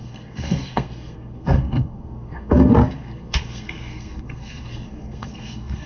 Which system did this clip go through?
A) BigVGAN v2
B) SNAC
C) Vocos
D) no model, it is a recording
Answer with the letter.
B